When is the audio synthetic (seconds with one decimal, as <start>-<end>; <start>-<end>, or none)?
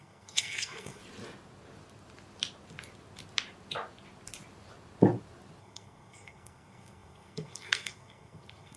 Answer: 0.0-1.0; 5.6-8.8